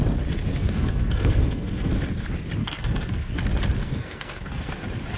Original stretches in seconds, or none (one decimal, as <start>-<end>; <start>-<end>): 0.0-0.5; 1.9-2.6; 3.4-3.8; 4.7-5.2